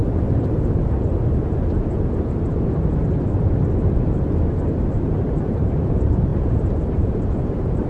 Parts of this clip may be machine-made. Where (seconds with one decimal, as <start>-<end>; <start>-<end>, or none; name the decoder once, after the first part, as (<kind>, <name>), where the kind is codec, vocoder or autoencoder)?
4.7-7.9 (vocoder, BigVGAN v2)